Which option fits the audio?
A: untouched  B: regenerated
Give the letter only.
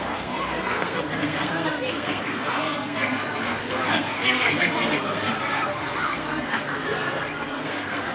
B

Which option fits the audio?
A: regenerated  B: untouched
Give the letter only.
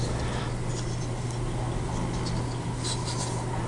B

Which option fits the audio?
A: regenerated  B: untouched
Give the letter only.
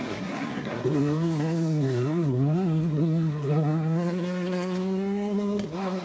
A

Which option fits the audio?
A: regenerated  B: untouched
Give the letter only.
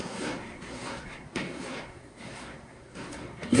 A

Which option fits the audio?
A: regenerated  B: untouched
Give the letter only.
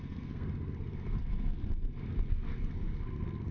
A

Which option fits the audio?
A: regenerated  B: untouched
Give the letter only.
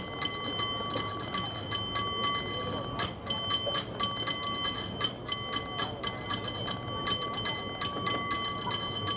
B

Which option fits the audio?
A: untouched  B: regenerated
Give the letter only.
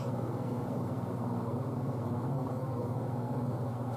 B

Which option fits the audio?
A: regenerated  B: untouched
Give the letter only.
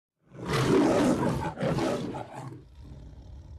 B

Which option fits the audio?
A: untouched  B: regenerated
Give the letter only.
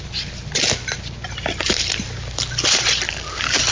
A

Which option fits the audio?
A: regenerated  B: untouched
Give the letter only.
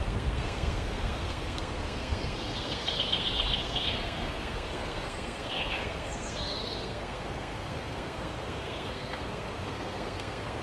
A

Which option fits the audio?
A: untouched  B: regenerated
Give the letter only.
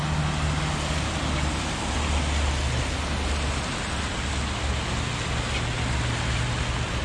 A